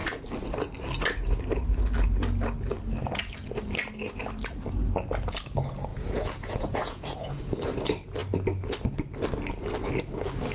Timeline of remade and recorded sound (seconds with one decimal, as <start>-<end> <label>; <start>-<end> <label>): 0.0-5.9 recorded; 5.9-7.5 remade; 7.5-10.5 recorded